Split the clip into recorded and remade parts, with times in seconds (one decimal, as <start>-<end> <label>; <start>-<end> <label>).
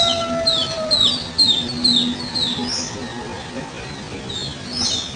0.0-5.2 recorded